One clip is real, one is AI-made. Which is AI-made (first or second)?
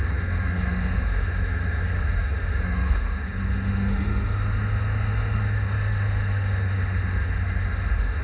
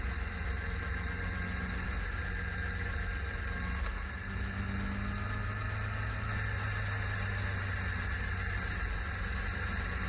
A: first